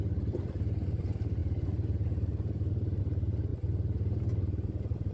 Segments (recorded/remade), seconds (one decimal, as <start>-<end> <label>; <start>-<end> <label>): 0.0-5.1 recorded